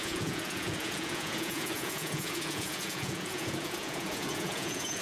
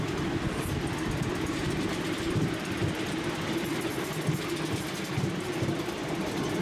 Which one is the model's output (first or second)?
first